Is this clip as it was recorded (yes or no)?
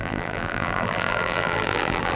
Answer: no